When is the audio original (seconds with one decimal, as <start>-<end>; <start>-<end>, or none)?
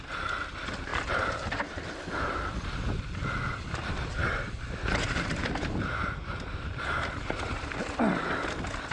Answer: 0.0-0.9; 2.0-4.2; 7.7-8.9